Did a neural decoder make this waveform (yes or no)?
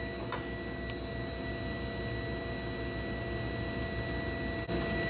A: no